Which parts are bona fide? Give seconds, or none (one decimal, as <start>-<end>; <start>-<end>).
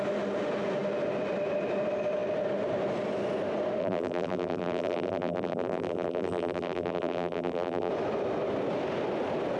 0.0-3.8; 7.9-9.6